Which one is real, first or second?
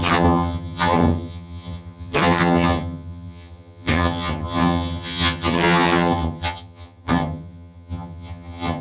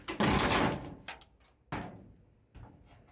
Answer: second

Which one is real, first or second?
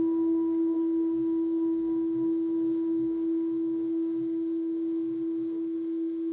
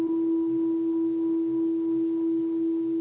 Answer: second